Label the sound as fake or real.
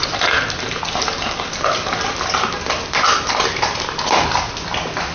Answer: real